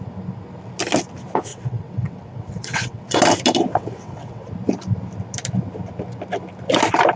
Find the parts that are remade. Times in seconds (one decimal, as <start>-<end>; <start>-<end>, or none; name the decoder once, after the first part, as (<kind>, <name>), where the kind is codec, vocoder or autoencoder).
1.5-3.2 (vocoder, WaveNeXt); 3.7-4.5